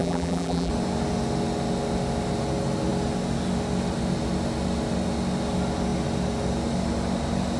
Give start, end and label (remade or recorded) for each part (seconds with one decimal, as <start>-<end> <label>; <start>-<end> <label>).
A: 0.0-0.7 remade; 0.7-7.6 recorded